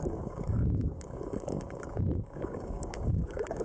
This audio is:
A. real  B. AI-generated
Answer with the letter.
B